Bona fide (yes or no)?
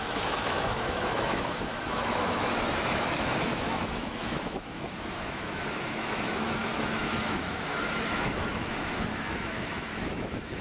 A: no